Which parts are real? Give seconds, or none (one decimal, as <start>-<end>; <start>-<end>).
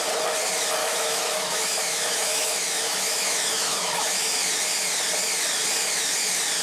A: 0.0-0.8; 4.5-6.6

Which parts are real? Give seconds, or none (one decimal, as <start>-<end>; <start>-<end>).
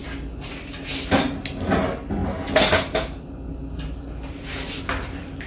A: 0.0-5.5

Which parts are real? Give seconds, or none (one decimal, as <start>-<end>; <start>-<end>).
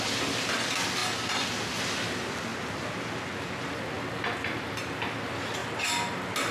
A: 0.0-1.0; 1.8-2.5; 3.8-6.5